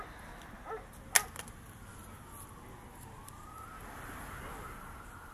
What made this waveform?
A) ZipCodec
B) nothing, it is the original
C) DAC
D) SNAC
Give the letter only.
B